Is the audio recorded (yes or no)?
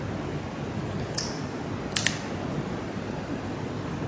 yes